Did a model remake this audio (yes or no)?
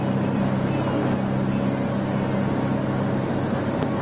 no